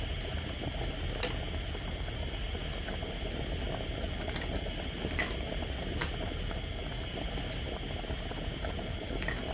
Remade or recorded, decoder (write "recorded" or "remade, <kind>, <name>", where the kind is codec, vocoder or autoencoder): recorded